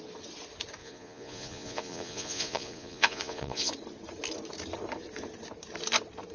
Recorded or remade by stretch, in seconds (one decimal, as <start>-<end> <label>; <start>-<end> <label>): 0.0-0.8 recorded; 0.8-3.7 remade; 3.7-6.3 recorded